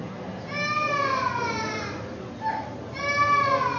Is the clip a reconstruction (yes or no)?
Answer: no